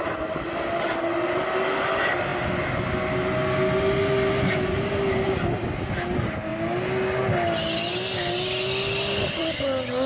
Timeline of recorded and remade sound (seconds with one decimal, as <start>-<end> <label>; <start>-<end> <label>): 0.0-10.1 recorded